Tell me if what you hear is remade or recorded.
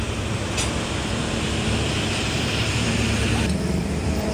remade